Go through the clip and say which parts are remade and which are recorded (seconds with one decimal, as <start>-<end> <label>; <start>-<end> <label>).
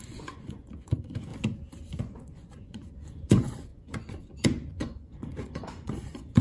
0.0-1.3 remade; 1.3-2.0 recorded; 2.0-6.4 remade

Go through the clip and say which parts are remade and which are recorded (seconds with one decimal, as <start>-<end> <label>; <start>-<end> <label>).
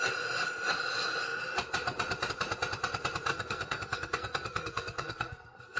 0.0-3.3 recorded; 3.3-5.8 remade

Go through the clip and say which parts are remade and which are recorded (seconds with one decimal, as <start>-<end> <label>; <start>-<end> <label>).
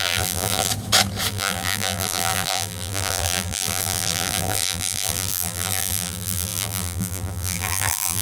0.0-0.7 remade; 0.7-1.3 recorded; 1.3-8.2 remade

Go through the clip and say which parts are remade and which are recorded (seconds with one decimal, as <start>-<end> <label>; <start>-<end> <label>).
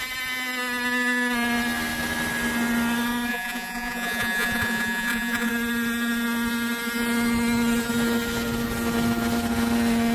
0.0-3.3 recorded; 3.3-5.5 remade; 5.5-10.1 recorded